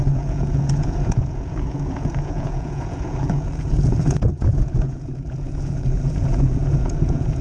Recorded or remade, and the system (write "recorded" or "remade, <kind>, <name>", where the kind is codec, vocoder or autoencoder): remade, vocoder, Vocos